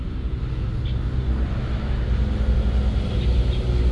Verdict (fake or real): real